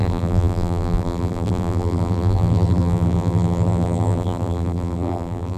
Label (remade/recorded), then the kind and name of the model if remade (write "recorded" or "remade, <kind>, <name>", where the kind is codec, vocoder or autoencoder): remade, vocoder, BigVGAN v2